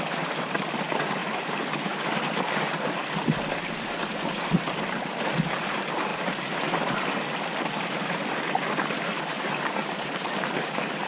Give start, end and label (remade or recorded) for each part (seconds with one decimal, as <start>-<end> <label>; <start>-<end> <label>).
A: 0.0-1.2 recorded; 1.2-1.7 remade; 1.7-3.0 recorded; 3.0-5.6 remade; 5.6-11.1 recorded